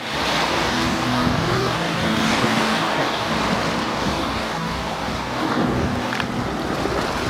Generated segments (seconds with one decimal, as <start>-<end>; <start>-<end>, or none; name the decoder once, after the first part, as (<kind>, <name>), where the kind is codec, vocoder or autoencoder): 0.5-3.3 (codec, DAC); 3.8-6.1